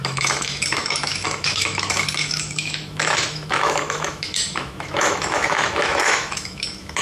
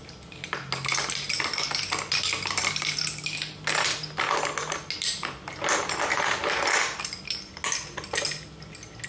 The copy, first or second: first